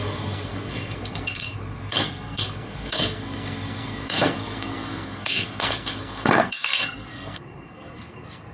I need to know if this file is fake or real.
fake